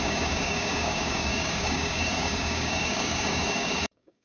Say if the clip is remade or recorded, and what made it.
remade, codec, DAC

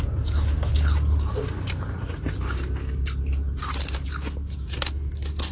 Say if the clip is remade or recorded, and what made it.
recorded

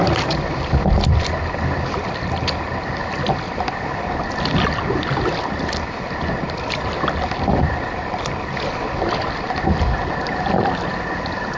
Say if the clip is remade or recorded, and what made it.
recorded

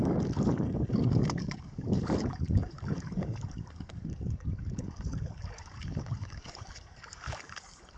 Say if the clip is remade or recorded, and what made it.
remade, codec, DAC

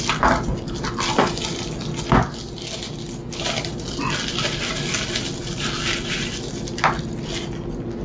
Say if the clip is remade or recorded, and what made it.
recorded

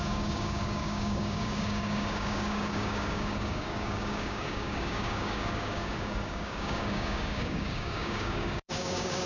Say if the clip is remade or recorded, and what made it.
remade, codec, DAC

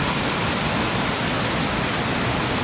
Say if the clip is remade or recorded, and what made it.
recorded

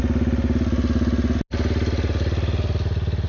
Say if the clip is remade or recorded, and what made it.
recorded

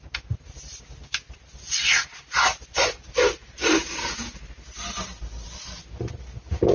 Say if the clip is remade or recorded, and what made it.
recorded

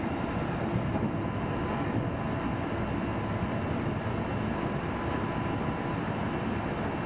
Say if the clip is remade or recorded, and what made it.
recorded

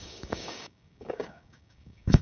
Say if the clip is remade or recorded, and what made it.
remade, codec, DAC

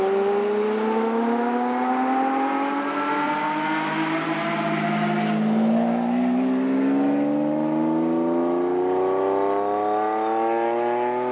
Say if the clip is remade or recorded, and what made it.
recorded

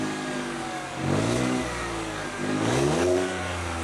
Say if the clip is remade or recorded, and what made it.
remade, codec, DAC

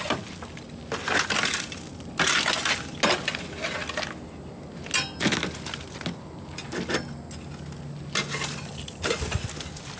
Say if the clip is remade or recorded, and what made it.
recorded